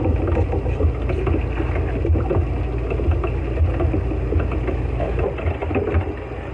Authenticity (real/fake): real